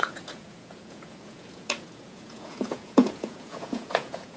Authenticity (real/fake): fake